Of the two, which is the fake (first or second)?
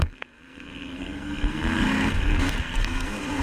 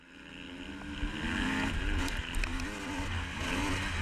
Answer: first